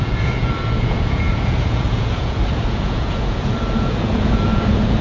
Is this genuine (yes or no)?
no